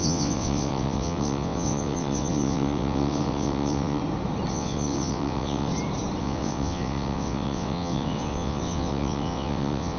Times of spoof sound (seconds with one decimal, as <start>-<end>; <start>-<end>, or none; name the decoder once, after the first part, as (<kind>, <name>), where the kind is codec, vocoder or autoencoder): 0.0-4.0 (vocoder, WaveNeXt); 4.5-5.7; 6.2-10.0